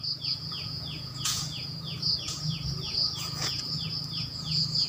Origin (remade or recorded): remade